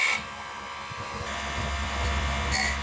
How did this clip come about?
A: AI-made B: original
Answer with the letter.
A